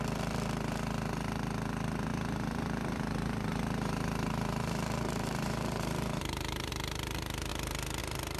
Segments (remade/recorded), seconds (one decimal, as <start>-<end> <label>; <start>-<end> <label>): 0.0-2.1 recorded; 2.1-6.7 remade; 6.7-8.4 recorded